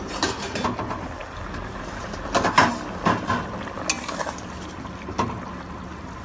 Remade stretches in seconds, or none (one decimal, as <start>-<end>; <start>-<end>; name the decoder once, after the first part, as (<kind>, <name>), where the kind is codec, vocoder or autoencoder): none